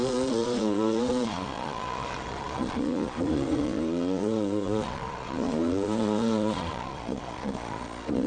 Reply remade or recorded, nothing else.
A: remade